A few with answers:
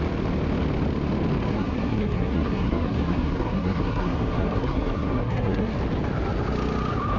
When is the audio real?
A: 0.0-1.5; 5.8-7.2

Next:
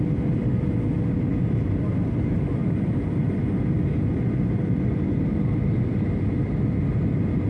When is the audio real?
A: 0.0-7.5

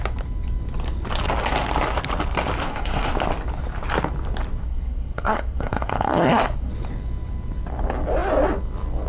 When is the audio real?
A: 0.0-2.6; 3.1-4.6; 6.7-9.1